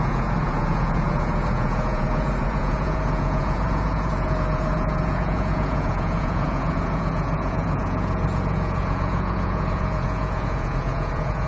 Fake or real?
fake